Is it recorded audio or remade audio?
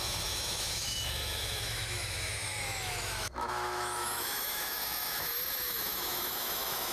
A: remade